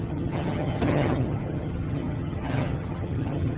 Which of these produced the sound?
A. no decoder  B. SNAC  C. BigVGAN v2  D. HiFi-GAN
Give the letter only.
D